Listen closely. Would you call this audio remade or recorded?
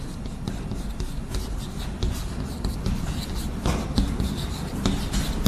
recorded